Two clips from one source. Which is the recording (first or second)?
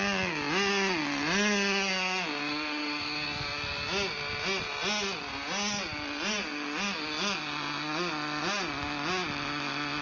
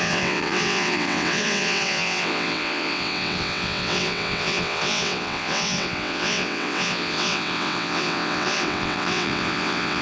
first